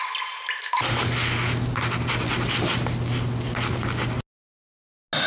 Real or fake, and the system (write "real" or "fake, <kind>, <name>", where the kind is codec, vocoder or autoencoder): real